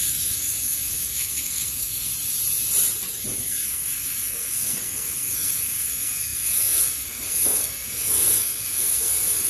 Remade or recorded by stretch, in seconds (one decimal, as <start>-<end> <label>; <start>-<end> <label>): 0.0-2.1 remade; 2.1-3.4 recorded; 3.4-9.5 remade